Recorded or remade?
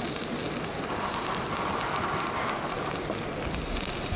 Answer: recorded